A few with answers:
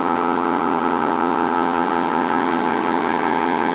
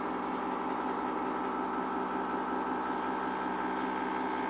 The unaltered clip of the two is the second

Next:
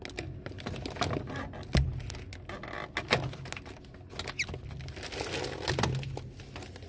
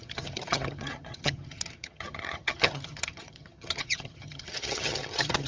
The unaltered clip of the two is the first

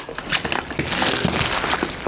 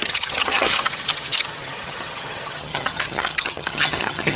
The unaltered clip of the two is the first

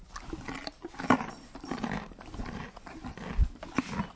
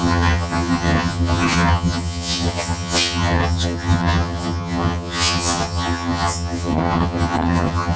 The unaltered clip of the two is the first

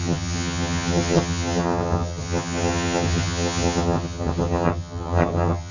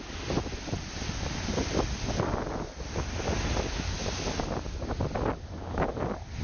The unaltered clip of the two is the second